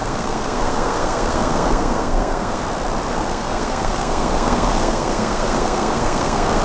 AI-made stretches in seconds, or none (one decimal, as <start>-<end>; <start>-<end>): 0.0-2.6; 3.1-6.6